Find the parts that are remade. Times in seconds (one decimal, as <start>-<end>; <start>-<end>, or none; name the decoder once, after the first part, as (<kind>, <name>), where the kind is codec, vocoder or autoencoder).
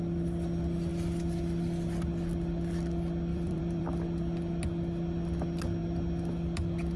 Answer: 3.3-4.0 (vocoder, BigVGAN v2)